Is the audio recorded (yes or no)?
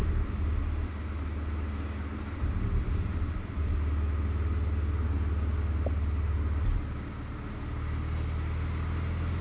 yes